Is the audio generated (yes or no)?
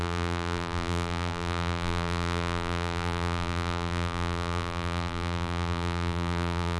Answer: yes